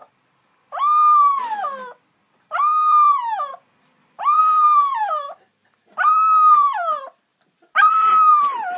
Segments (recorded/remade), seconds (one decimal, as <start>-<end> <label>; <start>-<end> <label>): 0.0-8.8 remade